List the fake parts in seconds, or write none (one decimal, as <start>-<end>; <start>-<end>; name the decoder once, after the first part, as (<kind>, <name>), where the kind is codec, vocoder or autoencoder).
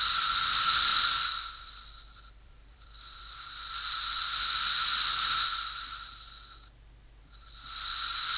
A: 0.0-0.9 (vocoder, BigVGAN v2); 1.6-4.2; 7.2-8.4